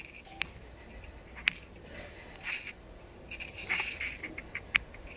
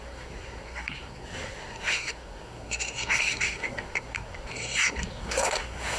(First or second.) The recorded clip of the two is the first